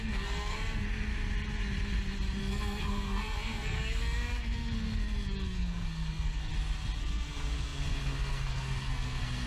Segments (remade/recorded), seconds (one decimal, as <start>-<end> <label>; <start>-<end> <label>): 0.0-1.1 remade; 1.1-2.4 recorded; 2.4-6.5 remade; 6.5-7.0 recorded; 7.0-9.5 remade